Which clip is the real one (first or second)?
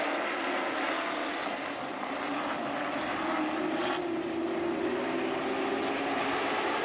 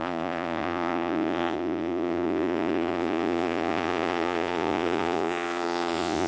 first